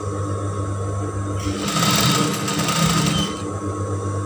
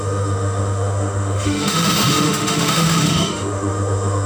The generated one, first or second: second